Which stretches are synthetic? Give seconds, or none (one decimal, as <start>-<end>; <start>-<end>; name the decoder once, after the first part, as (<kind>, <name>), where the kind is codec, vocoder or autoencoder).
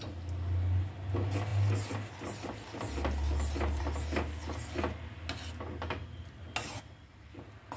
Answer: none